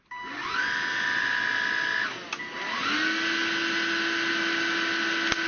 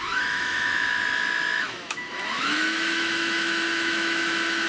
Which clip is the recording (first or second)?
first